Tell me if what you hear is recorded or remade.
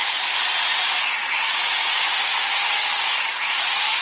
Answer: remade